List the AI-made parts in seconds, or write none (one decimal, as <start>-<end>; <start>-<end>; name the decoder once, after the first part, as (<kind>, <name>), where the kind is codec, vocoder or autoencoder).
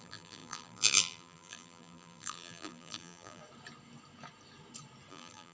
0.0-3.4 (vocoder, BigVGAN v2); 5.1-5.5